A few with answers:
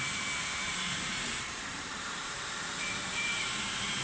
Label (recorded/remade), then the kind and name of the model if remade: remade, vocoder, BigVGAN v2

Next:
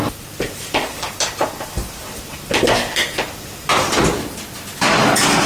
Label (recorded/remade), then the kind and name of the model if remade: recorded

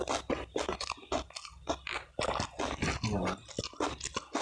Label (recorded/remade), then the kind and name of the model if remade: recorded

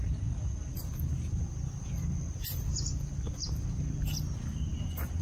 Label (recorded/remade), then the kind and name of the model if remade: recorded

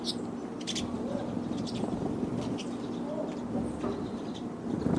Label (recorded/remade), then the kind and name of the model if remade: recorded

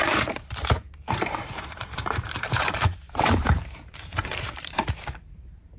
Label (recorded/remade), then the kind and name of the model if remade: remade, vocoder, BigVGAN v2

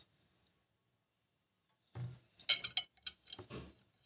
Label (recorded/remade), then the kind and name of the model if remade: recorded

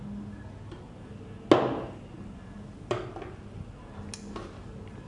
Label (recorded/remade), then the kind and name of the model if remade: recorded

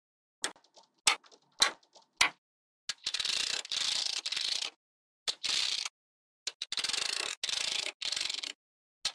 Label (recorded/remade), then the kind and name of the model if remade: recorded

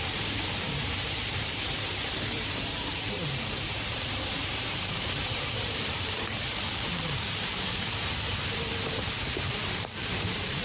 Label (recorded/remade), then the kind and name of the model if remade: remade, vocoder, BigVGAN v2